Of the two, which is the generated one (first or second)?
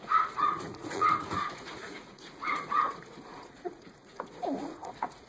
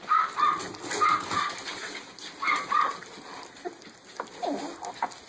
first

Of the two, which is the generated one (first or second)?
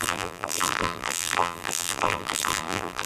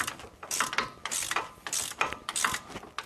first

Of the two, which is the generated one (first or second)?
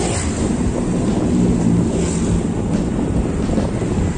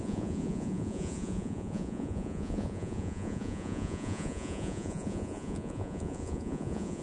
second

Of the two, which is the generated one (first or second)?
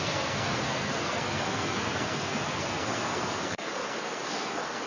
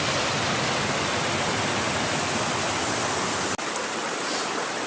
first